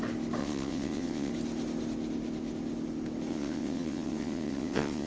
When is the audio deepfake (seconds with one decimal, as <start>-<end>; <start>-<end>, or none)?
0.4-1.3; 3.3-5.1